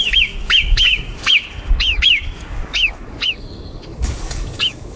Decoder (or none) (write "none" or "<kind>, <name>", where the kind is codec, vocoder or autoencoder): codec, DAC